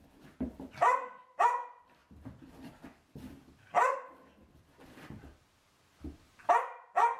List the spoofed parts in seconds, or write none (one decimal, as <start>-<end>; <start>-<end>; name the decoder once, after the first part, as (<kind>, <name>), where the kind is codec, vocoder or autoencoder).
none